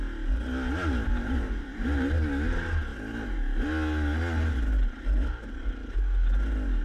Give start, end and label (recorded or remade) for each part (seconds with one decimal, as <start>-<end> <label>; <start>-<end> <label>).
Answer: 0.0-1.1 recorded; 1.1-2.2 remade; 2.2-6.8 recorded